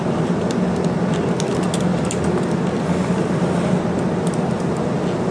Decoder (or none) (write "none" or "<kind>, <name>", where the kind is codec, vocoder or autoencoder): none